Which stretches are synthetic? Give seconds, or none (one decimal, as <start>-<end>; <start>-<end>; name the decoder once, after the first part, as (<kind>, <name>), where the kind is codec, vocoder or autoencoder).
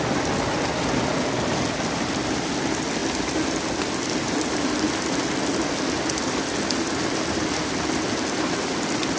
none